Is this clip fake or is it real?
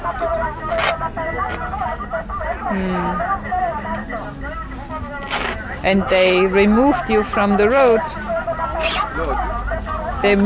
real